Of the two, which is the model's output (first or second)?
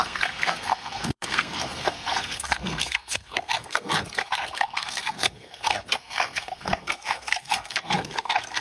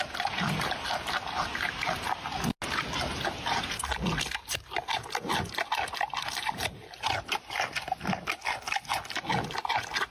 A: first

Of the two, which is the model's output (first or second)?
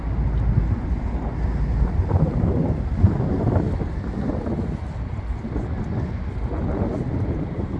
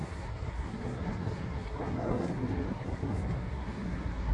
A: second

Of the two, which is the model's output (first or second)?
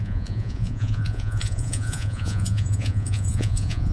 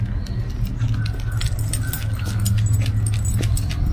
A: first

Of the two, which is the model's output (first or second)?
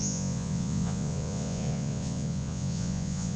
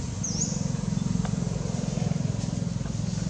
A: first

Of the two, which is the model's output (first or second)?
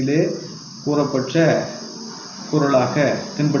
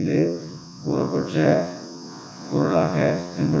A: second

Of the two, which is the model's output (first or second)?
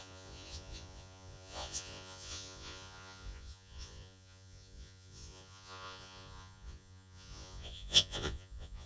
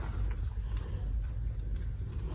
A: first